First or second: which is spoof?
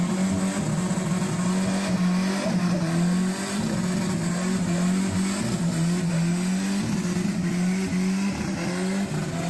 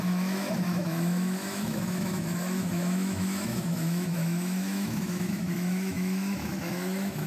second